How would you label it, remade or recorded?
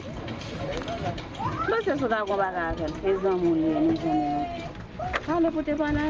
recorded